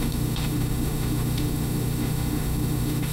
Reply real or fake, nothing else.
fake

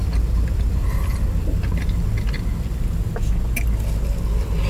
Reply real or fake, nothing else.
real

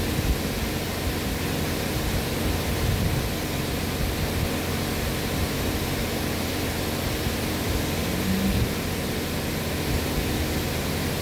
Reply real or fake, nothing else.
real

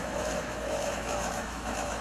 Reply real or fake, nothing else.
fake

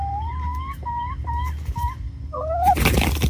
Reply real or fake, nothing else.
real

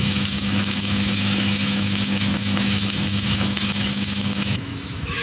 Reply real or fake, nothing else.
fake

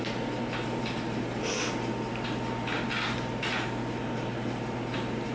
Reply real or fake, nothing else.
real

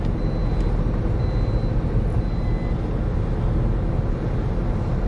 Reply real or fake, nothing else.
real